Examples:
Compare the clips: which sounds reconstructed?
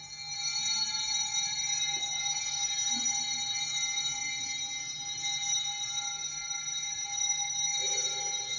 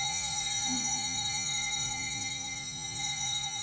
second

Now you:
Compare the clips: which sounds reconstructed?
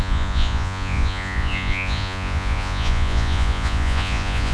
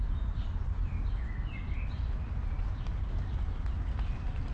first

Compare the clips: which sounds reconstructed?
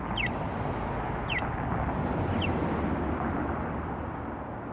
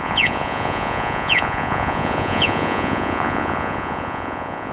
second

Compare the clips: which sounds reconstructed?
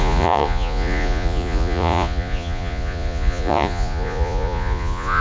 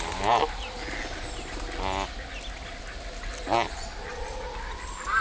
first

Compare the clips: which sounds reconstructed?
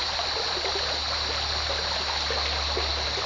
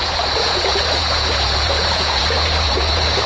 second